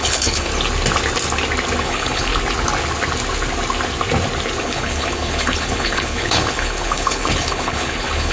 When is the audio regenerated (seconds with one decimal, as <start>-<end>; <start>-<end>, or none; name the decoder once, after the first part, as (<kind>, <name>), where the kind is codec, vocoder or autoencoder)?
0.0-0.5 (codec, HILCodec); 1.8-2.3; 4.6-8.3